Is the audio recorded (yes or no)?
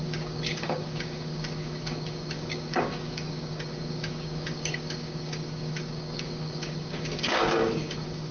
no